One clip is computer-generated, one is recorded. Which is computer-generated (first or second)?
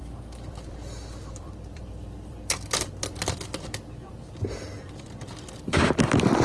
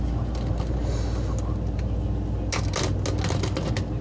first